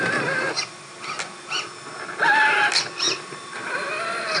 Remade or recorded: recorded